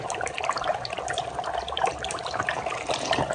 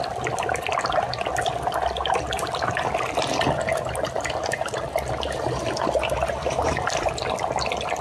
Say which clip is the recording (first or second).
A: second